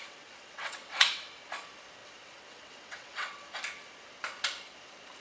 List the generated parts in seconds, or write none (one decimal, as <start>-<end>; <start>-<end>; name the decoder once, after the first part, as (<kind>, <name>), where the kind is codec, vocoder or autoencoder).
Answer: 0.0-1.4 (vocoder, WaveNeXt); 2.0-3.5